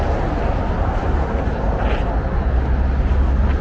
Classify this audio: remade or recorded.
recorded